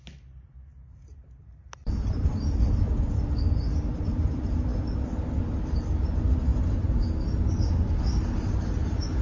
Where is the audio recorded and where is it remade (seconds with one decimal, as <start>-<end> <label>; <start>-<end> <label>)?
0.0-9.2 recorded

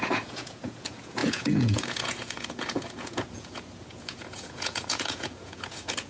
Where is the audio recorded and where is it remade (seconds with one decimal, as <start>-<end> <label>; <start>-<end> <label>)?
0.0-6.1 remade

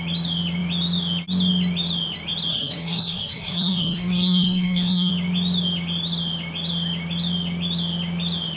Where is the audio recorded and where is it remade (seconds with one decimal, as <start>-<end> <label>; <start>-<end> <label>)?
0.0-2.5 recorded; 2.5-5.1 remade; 5.1-8.6 recorded

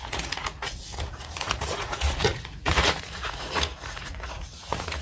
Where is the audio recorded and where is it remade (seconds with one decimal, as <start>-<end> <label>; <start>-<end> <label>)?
0.0-5.0 remade